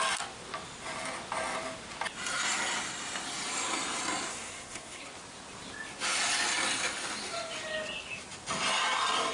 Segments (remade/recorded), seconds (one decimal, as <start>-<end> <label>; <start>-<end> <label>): 0.0-4.3 recorded; 4.3-5.0 remade; 5.0-9.3 recorded